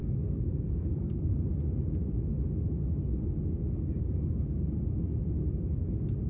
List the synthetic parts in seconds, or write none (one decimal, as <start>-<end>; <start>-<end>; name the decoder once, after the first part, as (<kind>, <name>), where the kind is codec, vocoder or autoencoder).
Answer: 0.0-1.4 (codec, SNAC)